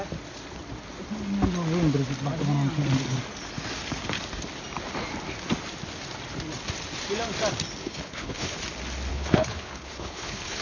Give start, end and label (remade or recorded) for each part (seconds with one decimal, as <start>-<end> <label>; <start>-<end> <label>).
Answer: 0.0-7.8 recorded; 7.8-8.6 remade; 8.6-9.1 recorded; 9.1-10.6 remade